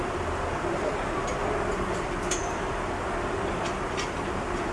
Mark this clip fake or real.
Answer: fake